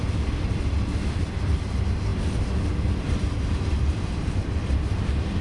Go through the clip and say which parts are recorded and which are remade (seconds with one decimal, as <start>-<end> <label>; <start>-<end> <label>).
0.0-1.4 remade; 1.4-2.1 recorded; 2.1-5.4 remade